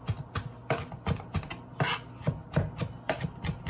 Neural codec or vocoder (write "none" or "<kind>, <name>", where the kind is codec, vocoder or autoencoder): none